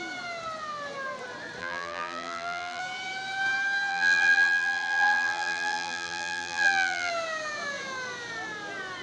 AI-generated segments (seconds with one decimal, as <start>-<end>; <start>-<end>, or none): 1.6-2.8; 3.9-7.1